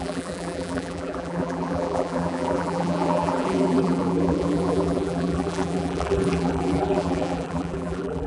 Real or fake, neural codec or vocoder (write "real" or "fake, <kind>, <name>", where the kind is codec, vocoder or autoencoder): fake, vocoder, BigVGAN v2